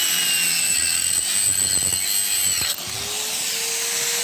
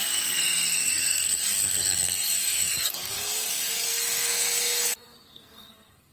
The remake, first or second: second